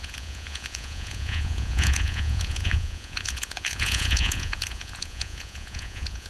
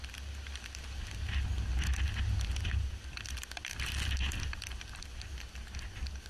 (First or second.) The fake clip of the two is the first